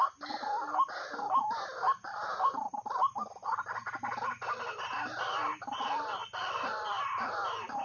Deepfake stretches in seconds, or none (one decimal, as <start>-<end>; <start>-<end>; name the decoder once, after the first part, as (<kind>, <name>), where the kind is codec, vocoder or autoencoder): 6.2-6.7 (vocoder, BigVGAN v2)